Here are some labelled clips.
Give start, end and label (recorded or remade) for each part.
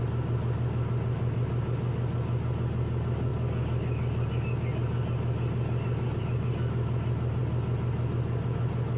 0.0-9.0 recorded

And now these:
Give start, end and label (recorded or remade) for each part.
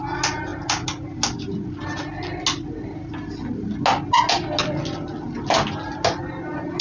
0.0-6.8 recorded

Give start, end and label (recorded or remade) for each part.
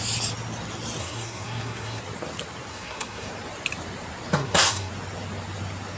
0.0-1.0 recorded; 1.0-2.0 remade; 2.0-2.7 recorded; 2.7-3.3 remade; 3.3-4.4 recorded; 4.4-4.9 remade; 4.9-6.0 recorded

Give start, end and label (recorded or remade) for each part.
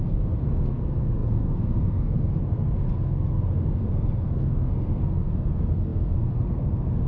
0.0-7.1 remade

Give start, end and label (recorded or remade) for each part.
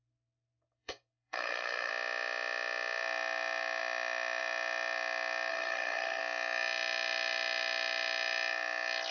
0.0-1.9 remade; 1.9-5.5 recorded; 5.5-6.2 remade; 6.2-9.1 recorded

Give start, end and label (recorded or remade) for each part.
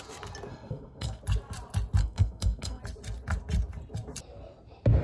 0.0-0.5 recorded; 0.5-1.2 remade; 1.2-2.0 recorded; 2.0-2.8 remade; 2.8-5.0 recorded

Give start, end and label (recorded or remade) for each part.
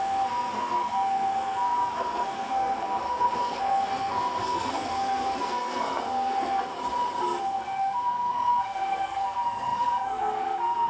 0.0-6.7 remade; 6.7-7.4 recorded; 7.4-10.9 remade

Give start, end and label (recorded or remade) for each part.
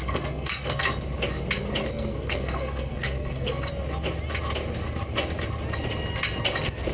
0.0-0.8 remade; 0.8-1.8 recorded; 1.8-3.7 remade; 3.7-6.9 recorded